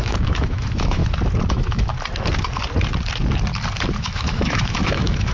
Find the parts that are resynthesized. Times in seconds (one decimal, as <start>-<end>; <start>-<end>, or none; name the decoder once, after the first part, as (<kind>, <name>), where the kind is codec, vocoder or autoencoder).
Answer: 0.0-1.0 (autoencoder, DAC-VAE); 1.5-1.9; 4.0-5.3